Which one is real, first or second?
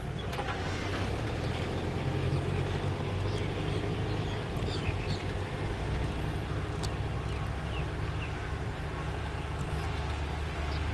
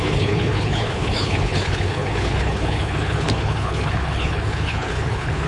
first